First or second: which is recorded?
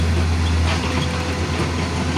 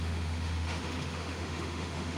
first